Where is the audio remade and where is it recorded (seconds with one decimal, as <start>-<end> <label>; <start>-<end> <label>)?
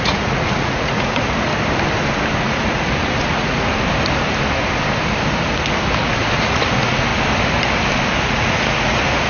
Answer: 0.0-1.5 remade; 1.5-2.4 recorded; 2.4-3.7 remade; 3.7-6.0 recorded; 6.0-7.1 remade; 7.1-8.2 recorded; 8.2-9.3 remade